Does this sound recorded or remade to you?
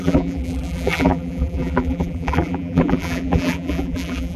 remade